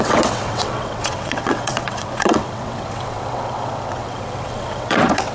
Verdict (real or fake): fake